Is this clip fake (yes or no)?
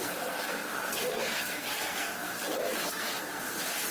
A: yes